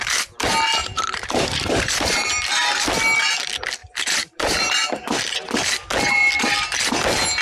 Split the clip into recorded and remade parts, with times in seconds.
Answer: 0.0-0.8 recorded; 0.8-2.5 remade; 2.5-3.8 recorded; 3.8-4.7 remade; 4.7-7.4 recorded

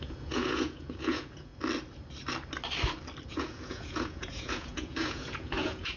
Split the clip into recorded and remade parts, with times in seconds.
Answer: 0.0-1.5 remade; 1.5-3.3 recorded; 3.3-6.0 remade